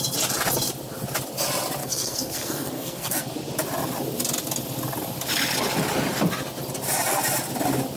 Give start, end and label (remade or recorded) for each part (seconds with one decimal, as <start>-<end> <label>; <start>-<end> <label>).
0.0-1.8 recorded; 1.8-3.3 remade; 3.3-8.0 recorded